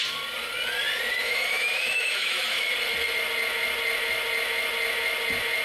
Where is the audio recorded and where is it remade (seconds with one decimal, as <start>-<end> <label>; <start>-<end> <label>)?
0.0-1.2 recorded; 1.2-2.7 remade; 2.7-5.6 recorded